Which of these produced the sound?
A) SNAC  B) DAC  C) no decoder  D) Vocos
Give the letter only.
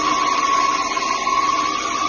C